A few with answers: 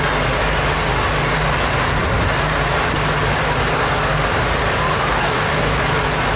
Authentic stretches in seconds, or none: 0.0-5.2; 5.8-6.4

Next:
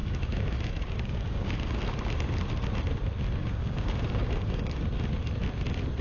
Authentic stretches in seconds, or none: 1.8-3.4; 4.7-6.0

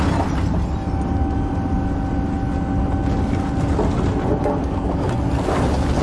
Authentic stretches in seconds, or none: 0.0-4.6; 5.1-6.0